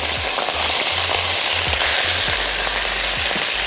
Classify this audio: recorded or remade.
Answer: recorded